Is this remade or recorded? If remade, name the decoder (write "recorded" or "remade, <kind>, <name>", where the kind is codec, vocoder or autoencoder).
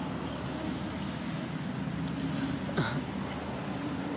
recorded